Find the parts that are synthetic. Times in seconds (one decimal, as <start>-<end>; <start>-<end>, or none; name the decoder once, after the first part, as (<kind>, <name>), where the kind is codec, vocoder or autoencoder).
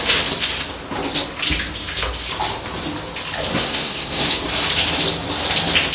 3.5-4.4 (codec, SNAC)